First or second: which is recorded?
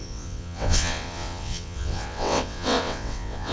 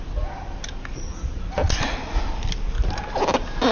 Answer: second